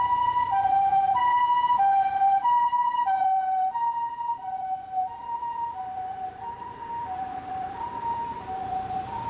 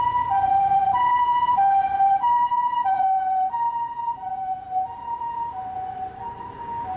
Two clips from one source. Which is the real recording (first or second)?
second